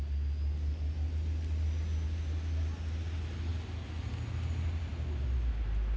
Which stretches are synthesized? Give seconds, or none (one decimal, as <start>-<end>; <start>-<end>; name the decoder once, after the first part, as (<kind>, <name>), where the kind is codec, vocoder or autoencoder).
none